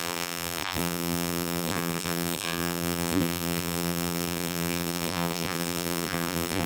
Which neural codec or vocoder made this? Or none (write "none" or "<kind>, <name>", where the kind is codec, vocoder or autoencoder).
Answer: vocoder, BigVGAN v2